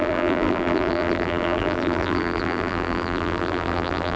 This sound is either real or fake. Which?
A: fake